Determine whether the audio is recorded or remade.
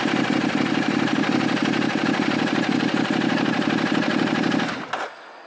recorded